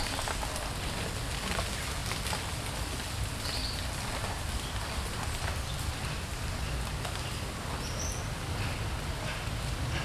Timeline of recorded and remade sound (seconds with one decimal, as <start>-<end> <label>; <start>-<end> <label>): 0.0-10.0 recorded